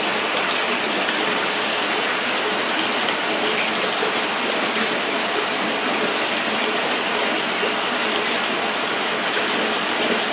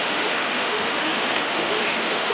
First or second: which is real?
first